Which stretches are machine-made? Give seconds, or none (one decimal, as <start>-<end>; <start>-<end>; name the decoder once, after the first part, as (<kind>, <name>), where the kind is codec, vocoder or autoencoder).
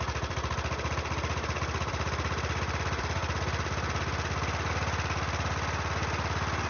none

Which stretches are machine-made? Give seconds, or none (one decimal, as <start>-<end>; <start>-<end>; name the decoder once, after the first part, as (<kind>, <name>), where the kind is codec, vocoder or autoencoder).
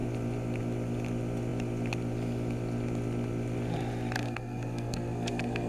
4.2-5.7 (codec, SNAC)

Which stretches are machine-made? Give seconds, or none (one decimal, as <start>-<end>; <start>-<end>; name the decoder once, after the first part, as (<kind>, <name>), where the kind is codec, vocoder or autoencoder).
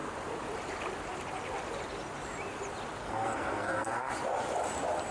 3.0-4.1 (codec, SNAC)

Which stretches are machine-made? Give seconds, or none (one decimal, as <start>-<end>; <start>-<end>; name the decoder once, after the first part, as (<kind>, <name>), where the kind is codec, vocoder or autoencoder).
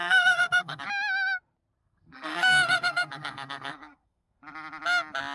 0.0-0.8 (codec, SNAC); 1.8-4.4